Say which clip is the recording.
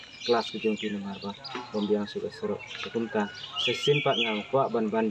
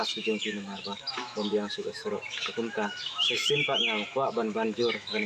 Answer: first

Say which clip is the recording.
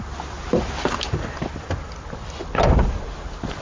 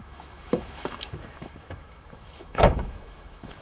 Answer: first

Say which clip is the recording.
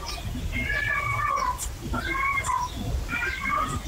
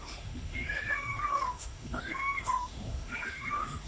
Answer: first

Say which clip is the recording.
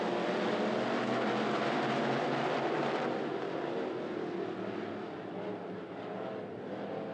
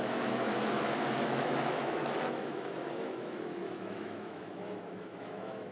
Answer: first